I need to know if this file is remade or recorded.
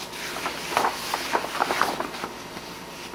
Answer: recorded